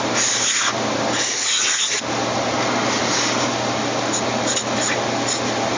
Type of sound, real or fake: real